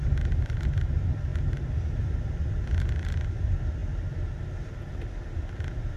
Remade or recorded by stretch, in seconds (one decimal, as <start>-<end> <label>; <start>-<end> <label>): 0.0-6.0 recorded